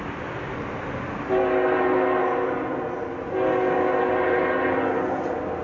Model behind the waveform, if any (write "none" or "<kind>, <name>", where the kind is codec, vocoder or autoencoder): none